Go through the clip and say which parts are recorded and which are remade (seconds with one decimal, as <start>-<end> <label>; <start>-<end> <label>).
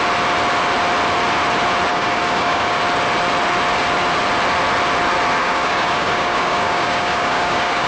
0.0-1.9 recorded; 1.9-2.8 remade; 2.8-5.4 recorded; 5.4-7.9 remade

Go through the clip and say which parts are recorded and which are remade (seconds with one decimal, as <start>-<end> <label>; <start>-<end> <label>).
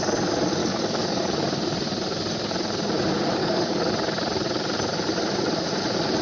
0.0-0.6 recorded; 0.6-1.2 remade; 1.2-3.4 recorded; 3.4-3.9 remade; 3.9-6.2 recorded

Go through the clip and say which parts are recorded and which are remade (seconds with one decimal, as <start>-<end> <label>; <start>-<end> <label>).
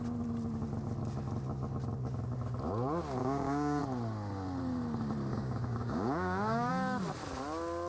0.0-3.2 recorded; 3.2-3.8 remade; 3.8-5.3 recorded; 5.3-6.7 remade; 6.7-7.9 recorded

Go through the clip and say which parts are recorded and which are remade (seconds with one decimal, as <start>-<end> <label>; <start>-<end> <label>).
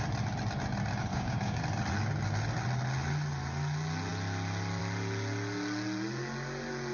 0.0-1.1 recorded; 1.1-1.6 remade; 1.6-6.9 recorded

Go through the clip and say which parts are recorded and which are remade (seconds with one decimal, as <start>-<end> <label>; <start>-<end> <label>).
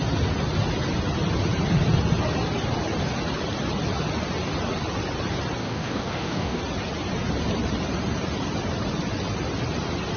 0.0-5.6 recorded; 5.6-6.6 remade; 6.6-10.2 recorded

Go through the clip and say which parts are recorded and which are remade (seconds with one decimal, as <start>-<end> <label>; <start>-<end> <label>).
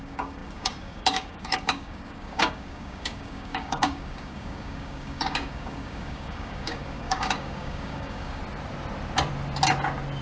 0.0-8.4 remade; 8.4-10.2 recorded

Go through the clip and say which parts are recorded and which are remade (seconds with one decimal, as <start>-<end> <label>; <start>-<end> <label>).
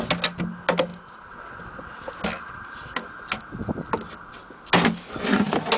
0.0-5.8 recorded